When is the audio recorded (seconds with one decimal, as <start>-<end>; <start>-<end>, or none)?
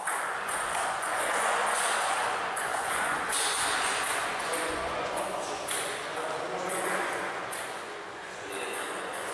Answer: 6.1-6.7